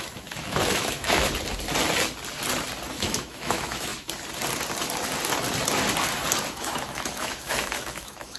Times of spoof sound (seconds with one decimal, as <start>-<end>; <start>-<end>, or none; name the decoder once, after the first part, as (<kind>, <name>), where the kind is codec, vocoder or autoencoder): 0.0-1.3 (autoencoder, DAC-VAE); 2.9-3.9; 6.5-8.4